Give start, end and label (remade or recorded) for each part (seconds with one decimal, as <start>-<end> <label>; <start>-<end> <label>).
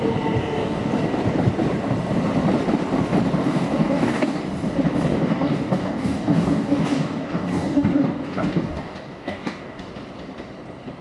0.0-0.4 recorded; 0.4-0.9 remade; 0.9-3.4 recorded; 3.4-4.4 remade; 4.4-5.1 recorded; 5.1-9.9 remade; 9.9-11.0 recorded